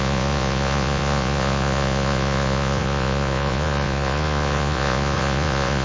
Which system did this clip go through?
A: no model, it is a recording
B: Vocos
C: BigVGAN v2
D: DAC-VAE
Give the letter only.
B